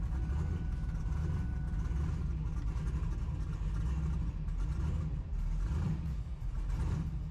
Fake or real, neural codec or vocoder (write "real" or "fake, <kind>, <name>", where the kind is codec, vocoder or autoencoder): real